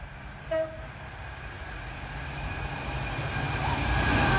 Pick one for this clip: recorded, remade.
recorded